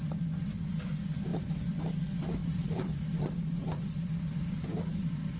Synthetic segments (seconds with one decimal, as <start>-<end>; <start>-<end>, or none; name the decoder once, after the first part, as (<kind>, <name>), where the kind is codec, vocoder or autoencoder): 1.3-2.0 (vocoder, BigVGAN v2); 2.4-5.4